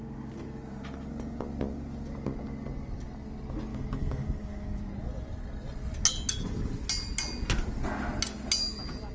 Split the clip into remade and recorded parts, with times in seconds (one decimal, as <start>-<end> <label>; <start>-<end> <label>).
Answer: 0.0-3.7 recorded; 3.7-4.9 remade; 4.9-9.1 recorded